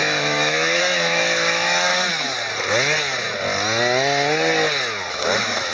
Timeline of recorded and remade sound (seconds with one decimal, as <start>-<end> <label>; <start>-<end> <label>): 0.0-1.9 remade; 1.9-5.1 recorded; 5.1-5.7 remade